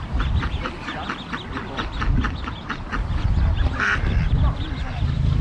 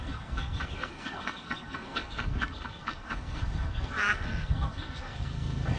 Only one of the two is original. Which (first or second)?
first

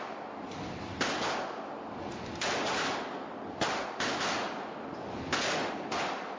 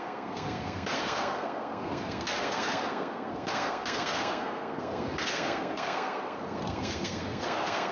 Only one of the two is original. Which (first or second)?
first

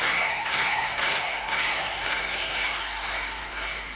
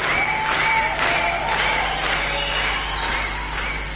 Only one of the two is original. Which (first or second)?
second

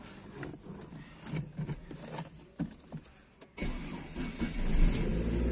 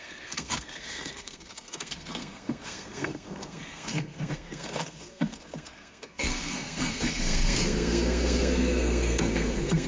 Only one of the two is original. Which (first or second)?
first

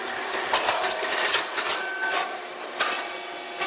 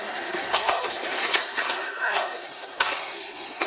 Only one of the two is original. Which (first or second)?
first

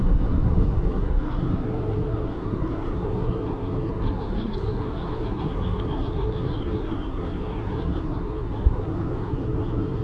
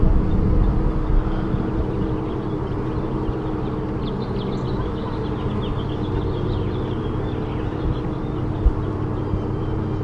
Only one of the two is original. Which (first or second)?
second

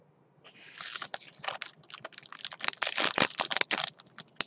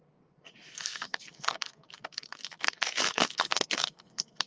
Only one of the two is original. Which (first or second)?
first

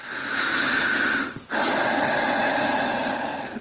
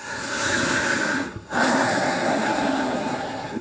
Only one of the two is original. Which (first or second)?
first